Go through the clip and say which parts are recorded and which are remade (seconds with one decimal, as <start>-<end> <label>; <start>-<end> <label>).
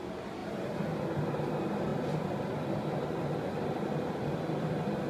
0.0-0.4 recorded; 0.4-0.9 remade; 0.9-5.1 recorded